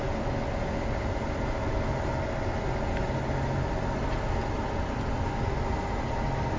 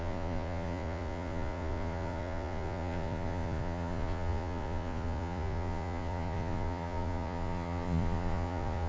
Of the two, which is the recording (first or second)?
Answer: first